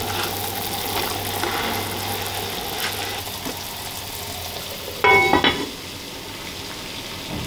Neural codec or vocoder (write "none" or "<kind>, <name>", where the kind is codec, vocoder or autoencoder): none